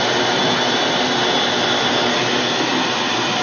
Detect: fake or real real